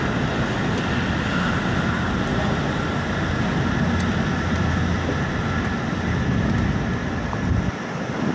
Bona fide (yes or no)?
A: yes